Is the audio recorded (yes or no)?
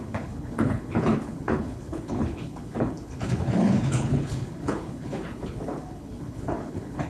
no